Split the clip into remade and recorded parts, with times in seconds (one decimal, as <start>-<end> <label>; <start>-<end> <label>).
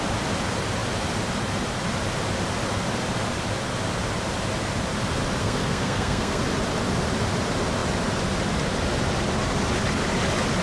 0.0-5.4 recorded; 5.4-6.4 remade; 6.4-10.6 recorded